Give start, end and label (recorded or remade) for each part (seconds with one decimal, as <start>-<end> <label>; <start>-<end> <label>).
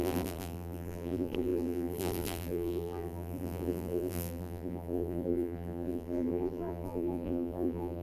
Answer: 0.0-8.0 remade